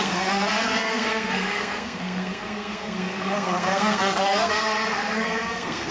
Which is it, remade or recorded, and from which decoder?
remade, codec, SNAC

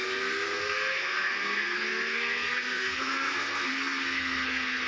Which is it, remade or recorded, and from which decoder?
remade, codec, SNAC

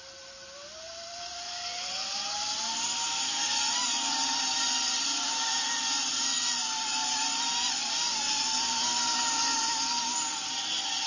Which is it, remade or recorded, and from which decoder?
recorded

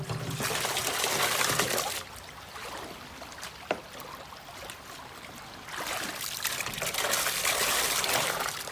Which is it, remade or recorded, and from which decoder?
recorded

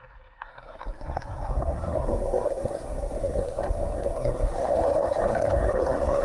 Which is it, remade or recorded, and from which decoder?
remade, codec, SNAC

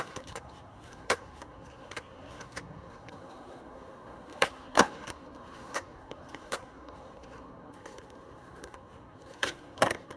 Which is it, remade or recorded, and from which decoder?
remade, codec, SNAC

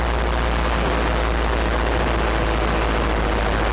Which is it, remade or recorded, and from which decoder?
recorded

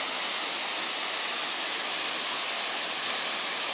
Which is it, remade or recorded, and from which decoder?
recorded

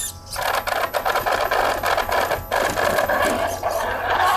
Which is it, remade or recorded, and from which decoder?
recorded